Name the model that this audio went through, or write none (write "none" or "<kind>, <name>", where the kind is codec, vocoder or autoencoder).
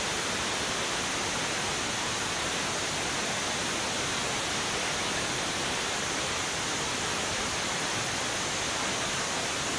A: none